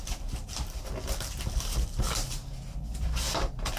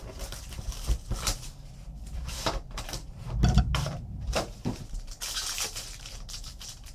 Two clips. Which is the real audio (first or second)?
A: first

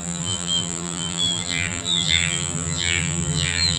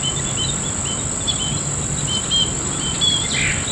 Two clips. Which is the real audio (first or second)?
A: second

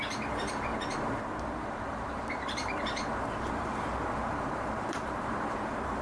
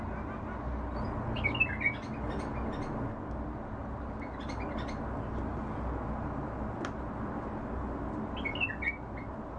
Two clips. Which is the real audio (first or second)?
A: second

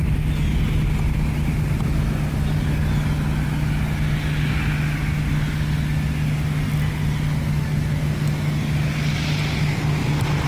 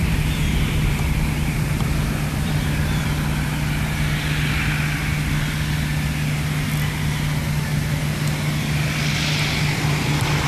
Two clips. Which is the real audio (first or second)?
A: first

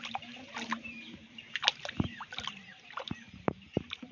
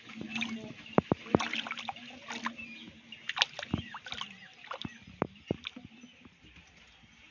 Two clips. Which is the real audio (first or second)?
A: second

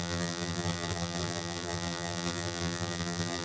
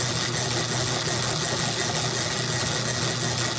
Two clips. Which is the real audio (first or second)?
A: second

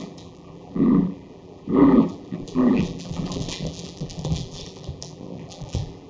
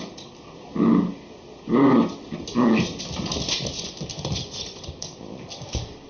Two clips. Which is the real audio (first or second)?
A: second